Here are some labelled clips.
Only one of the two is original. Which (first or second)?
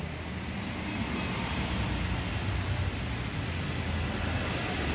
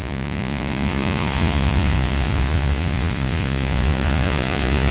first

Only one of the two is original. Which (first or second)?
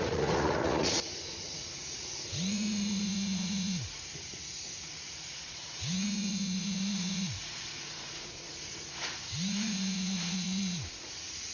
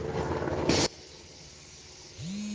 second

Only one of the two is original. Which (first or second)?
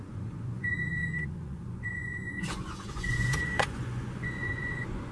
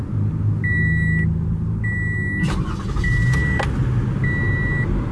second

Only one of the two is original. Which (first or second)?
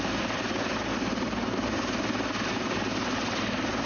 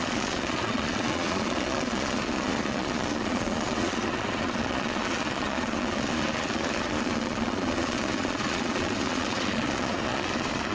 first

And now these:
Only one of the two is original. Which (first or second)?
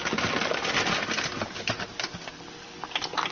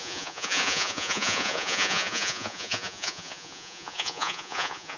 first